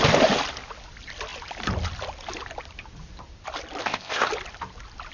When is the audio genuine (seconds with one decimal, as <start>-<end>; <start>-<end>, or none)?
0.0-3.8; 4.3-5.1